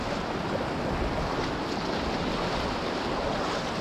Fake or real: real